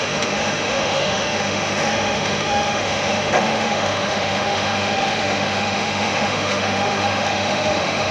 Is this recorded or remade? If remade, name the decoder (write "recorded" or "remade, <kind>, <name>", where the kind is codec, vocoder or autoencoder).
remade, autoencoder, DAC-VAE